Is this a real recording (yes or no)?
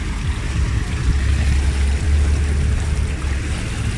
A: yes